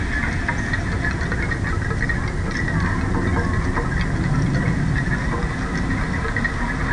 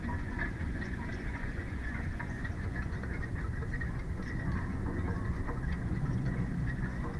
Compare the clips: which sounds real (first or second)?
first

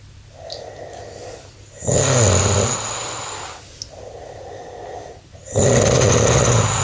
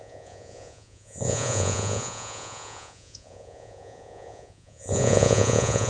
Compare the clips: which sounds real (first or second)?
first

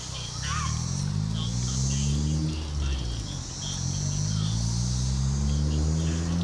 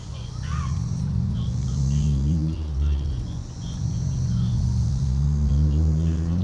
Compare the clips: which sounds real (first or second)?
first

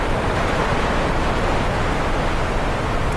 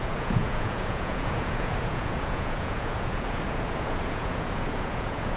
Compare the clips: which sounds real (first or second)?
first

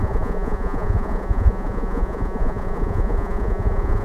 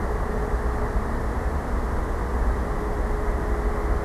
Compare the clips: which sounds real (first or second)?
second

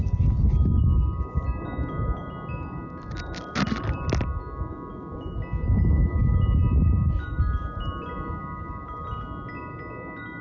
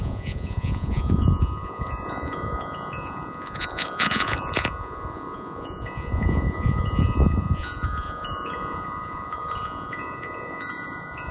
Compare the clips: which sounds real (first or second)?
first